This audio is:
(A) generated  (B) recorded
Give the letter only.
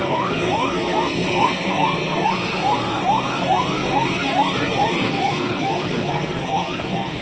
A